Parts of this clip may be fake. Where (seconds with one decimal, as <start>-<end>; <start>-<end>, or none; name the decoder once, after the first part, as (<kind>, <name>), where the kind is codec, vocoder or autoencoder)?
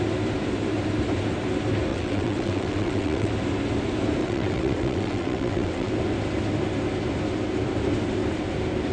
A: 1.9-3.3 (vocoder, WaveNeXt); 4.2-5.9